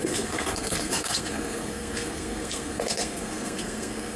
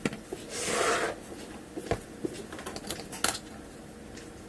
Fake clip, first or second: first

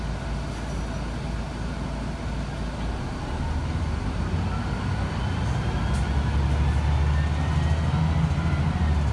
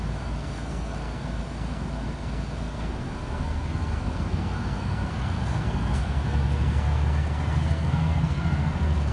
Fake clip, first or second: second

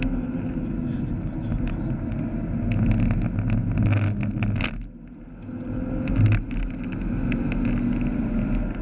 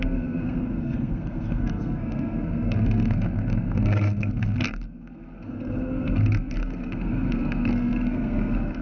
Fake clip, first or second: second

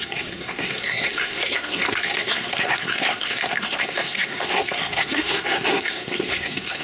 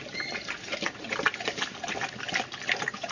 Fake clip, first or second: first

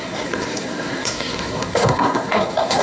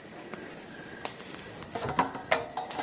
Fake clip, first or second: first